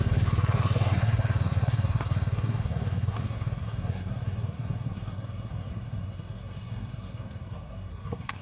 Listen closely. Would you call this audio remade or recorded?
remade